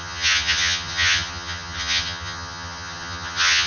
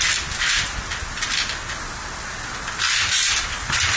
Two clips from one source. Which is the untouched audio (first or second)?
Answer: second